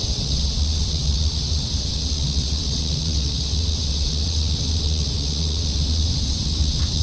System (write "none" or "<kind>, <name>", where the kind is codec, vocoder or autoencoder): vocoder, WaveNeXt